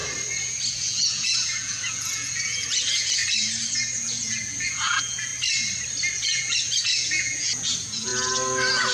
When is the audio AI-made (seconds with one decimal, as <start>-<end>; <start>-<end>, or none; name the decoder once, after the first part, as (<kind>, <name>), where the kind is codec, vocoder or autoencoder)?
0.7-3.2 (vocoder, Vocos); 4.0-5.3; 6.1-8.1